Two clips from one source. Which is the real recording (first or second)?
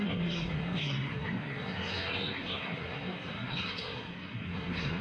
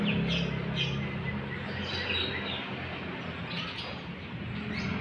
second